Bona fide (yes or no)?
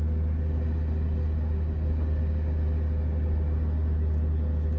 yes